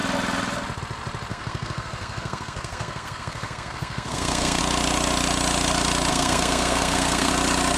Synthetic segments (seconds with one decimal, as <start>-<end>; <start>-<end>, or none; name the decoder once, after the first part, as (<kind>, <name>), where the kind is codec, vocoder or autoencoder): 1.3-4.6 (codec, SNAC); 6.1-7.3